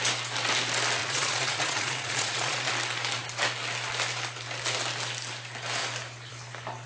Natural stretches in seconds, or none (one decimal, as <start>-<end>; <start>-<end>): 0.0-1.0; 2.7-6.9